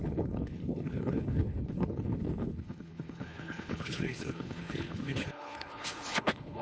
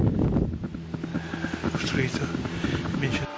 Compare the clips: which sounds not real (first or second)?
first